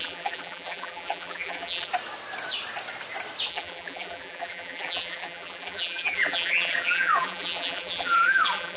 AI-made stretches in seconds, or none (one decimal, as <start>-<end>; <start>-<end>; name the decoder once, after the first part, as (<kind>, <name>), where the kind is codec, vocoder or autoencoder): 0.0-1.9 (vocoder, BigVGAN v2); 3.5-8.8